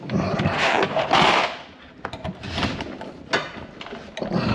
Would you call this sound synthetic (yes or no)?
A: no